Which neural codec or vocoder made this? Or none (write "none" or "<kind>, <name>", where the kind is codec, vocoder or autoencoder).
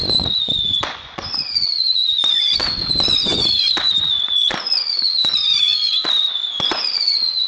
vocoder, Vocos